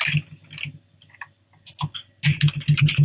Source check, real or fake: real